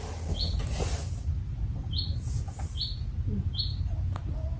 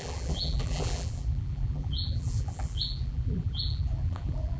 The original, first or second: first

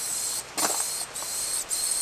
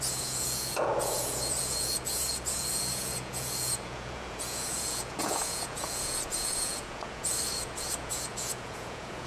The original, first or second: first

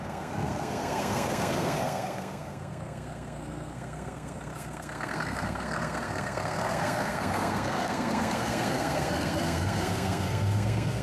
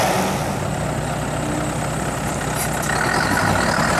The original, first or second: second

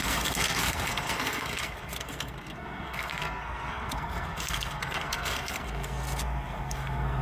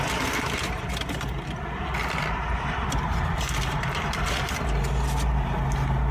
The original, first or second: second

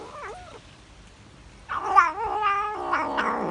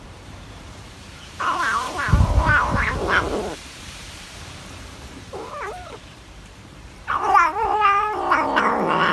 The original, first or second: first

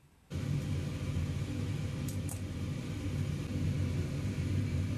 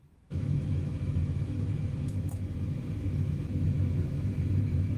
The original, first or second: first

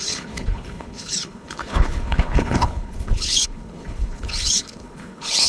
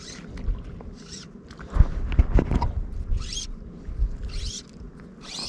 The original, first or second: second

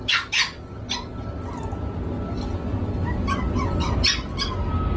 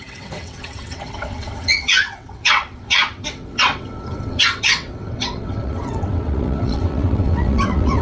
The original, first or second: first